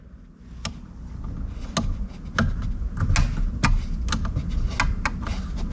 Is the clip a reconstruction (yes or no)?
no